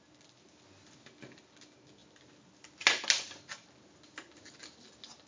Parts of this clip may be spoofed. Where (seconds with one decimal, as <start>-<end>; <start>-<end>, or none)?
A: none